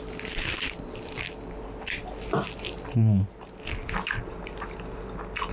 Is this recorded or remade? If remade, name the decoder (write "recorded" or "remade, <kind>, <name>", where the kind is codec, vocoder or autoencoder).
recorded